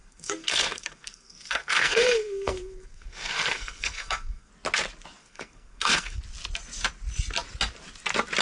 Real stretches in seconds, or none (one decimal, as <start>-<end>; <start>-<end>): 4.5-5.2; 6.2-8.4